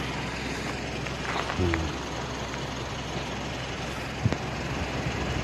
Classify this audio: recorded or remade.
recorded